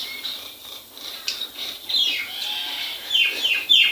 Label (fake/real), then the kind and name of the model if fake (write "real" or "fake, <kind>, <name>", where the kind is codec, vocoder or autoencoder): fake, vocoder, BigVGAN v2